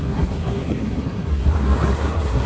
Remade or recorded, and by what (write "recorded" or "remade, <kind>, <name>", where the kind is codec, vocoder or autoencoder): remade, codec, SNAC